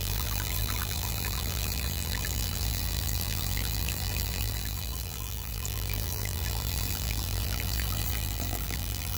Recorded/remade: remade